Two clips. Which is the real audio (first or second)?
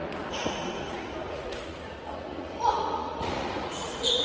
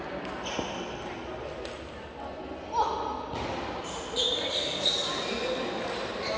second